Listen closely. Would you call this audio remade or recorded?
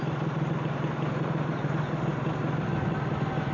recorded